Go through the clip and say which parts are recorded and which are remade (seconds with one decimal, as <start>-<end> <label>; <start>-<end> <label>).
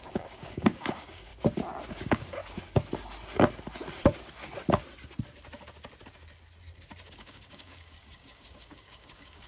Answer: 0.0-1.3 remade; 1.3-1.9 recorded; 1.9-2.4 remade; 2.4-7.1 recorded; 7.1-9.5 remade